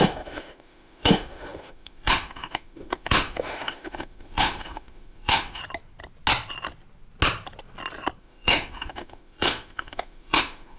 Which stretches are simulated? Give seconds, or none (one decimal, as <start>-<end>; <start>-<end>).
0.0-5.6; 8.2-10.8